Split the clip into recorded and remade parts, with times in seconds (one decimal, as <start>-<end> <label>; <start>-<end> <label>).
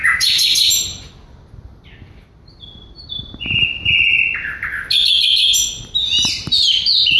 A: 0.0-7.2 recorded